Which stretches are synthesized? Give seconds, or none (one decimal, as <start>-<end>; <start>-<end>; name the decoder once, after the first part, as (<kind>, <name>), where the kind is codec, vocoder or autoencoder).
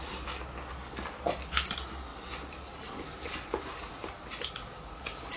none